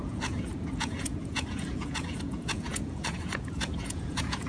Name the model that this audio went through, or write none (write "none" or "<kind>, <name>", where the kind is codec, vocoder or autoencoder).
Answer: vocoder, Vocos